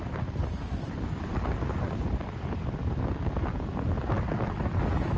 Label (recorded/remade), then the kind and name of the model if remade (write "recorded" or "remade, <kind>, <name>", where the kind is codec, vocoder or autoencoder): recorded